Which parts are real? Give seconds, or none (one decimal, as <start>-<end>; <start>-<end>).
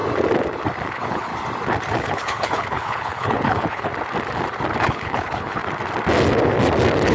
0.0-0.9; 1.3-1.9; 3.9-4.8; 5.6-7.1